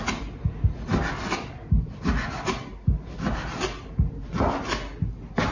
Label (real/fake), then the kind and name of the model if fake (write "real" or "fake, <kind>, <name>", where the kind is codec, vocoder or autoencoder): real